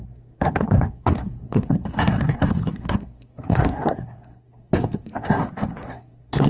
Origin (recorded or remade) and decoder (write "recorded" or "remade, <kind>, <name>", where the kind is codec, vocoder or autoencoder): remade, codec, SNAC